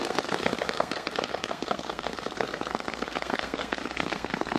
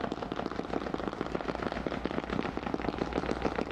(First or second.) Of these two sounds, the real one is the second